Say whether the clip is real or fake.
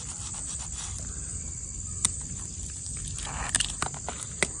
real